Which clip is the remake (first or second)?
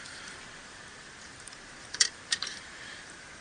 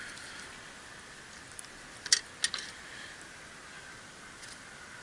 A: first